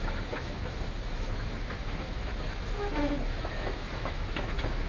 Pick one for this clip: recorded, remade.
remade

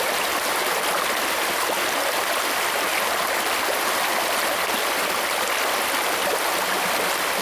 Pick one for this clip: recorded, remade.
recorded